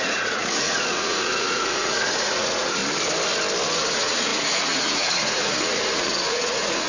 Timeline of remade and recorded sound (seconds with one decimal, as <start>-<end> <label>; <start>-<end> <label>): 0.0-2.8 remade; 2.8-3.9 recorded; 3.9-6.9 remade